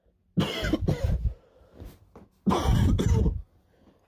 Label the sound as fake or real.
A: real